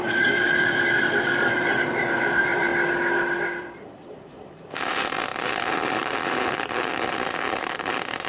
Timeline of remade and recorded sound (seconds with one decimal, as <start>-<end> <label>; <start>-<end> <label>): 0.0-2.7 remade; 2.7-3.6 recorded; 3.6-8.3 remade